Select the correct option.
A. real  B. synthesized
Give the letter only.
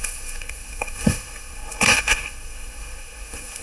B